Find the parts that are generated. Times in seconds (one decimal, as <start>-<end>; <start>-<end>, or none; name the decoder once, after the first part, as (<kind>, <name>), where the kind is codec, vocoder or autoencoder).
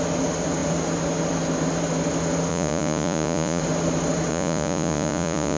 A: 2.5-3.6 (vocoder, Vocos); 4.3-5.6